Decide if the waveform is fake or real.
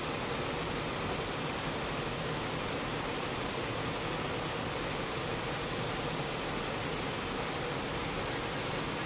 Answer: real